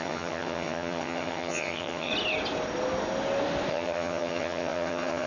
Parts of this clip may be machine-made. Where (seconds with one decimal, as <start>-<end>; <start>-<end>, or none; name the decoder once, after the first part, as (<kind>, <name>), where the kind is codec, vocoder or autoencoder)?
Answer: 0.0-2.1 (vocoder, HiFi-GAN); 3.7-5.3